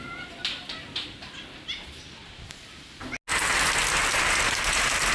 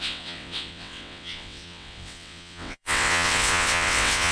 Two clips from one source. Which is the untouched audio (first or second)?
first